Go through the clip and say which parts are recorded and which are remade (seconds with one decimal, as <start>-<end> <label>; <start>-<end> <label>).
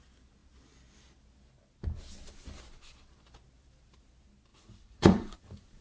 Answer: 0.0-4.5 recorded; 4.5-5.8 remade